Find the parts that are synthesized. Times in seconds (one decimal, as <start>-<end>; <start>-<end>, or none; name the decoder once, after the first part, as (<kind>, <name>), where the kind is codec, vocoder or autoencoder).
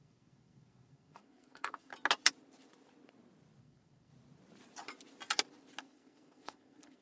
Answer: 0.0-1.9 (codec, SNAC); 3.6-4.1; 5.8-7.0